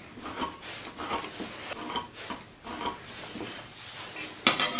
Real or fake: real